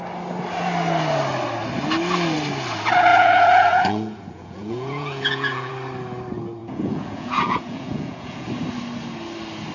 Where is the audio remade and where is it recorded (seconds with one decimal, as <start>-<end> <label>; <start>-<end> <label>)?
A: 0.0-3.1 recorded; 3.1-5.7 remade; 5.7-6.6 recorded; 6.6-8.5 remade; 8.5-9.7 recorded